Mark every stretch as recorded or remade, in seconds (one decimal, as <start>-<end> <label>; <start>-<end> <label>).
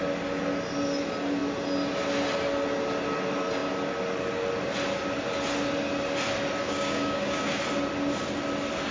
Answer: 0.0-6.6 recorded; 6.6-7.6 remade; 7.6-8.9 recorded